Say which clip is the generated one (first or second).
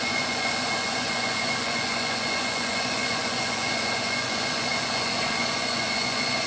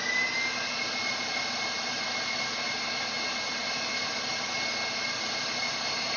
first